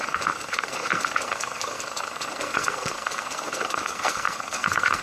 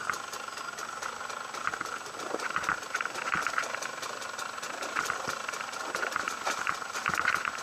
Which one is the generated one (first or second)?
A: first